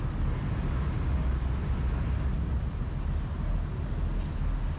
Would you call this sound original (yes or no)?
yes